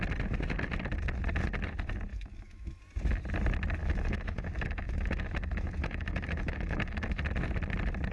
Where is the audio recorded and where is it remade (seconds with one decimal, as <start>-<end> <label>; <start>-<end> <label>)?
0.0-2.1 recorded; 2.1-2.8 remade; 2.8-3.8 recorded; 3.8-7.2 remade; 7.2-8.1 recorded